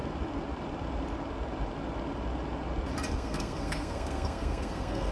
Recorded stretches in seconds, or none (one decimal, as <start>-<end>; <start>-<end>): 0.0-3.1